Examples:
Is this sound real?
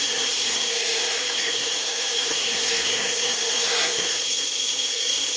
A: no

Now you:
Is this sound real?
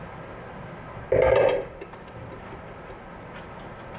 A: yes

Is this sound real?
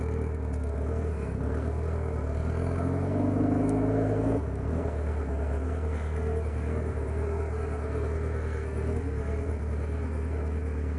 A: no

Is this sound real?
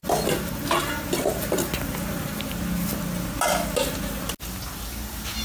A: yes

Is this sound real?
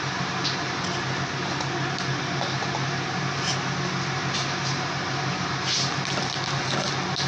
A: yes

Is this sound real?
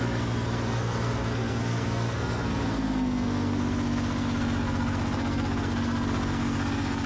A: no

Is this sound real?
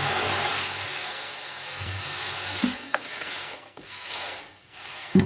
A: no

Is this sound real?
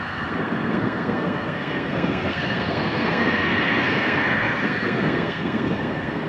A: no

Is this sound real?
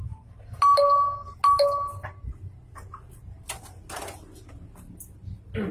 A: yes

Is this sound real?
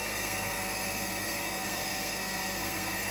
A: no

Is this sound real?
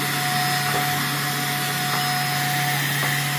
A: yes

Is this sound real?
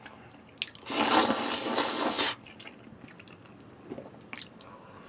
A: yes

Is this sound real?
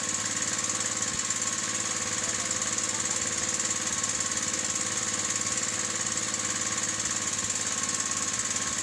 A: yes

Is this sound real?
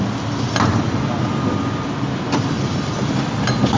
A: yes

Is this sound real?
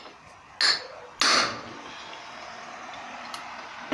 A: yes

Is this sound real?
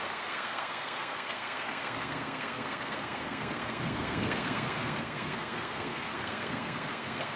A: no